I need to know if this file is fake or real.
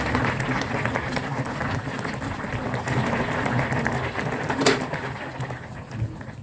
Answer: fake